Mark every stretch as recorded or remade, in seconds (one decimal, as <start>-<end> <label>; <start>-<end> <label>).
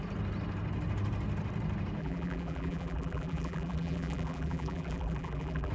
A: 0.0-2.0 recorded; 2.0-5.7 remade